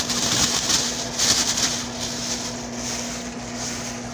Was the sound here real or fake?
real